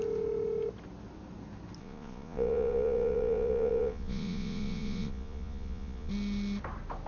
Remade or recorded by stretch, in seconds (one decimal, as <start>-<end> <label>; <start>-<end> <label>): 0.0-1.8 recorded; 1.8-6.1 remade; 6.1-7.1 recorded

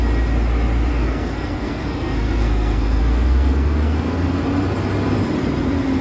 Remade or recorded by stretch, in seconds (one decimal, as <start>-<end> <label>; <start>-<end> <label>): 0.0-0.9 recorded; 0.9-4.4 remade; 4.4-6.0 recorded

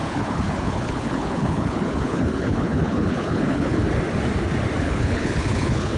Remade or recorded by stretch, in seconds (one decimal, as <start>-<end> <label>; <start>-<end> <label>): 0.0-3.8 remade; 3.8-4.8 recorded; 4.8-6.0 remade